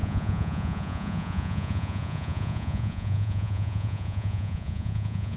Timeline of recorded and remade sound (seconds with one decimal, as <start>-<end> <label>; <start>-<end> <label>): 0.0-5.4 remade